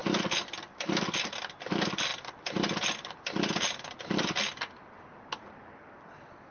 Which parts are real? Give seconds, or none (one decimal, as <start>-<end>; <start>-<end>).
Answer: 0.0-6.5